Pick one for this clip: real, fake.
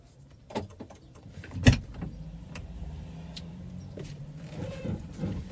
fake